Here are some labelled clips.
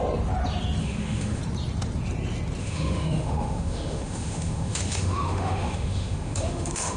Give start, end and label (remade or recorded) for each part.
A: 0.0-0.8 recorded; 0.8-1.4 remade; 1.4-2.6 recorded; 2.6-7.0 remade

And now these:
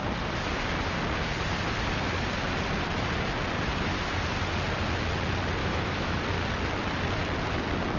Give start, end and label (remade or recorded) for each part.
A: 0.0-5.6 recorded; 5.6-6.2 remade; 6.2-8.0 recorded

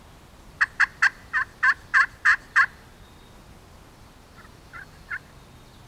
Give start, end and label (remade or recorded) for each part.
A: 0.0-5.9 recorded

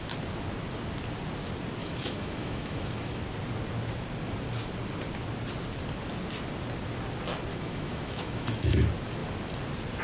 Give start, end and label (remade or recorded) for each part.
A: 0.0-1.8 recorded; 1.8-3.2 remade; 3.2-7.5 recorded; 7.5-8.7 remade; 8.7-10.0 recorded